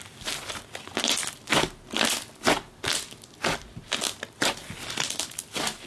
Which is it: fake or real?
real